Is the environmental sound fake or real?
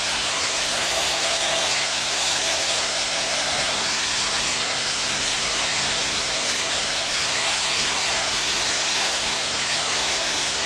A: fake